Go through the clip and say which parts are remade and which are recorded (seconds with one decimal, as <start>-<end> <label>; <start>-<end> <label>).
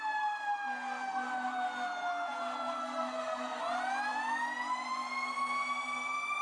0.0-2.8 recorded; 2.8-3.6 remade; 3.6-6.4 recorded